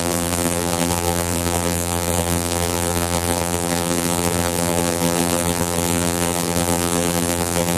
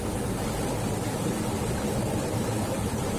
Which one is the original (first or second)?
second